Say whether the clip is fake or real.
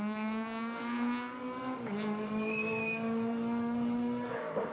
fake